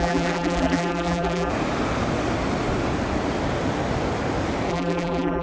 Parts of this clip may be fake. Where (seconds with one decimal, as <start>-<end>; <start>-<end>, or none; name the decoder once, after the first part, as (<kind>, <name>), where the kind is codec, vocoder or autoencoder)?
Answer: 0.0-1.5 (vocoder, BigVGAN v2); 4.7-5.4